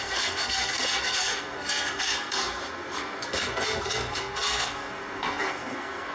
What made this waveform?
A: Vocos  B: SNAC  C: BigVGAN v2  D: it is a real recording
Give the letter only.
B